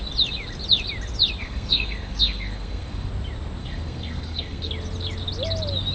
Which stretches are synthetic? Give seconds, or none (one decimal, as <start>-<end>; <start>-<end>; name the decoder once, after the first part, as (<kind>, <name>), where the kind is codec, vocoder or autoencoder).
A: 1.4-3.1 (codec, SNAC); 3.6-4.7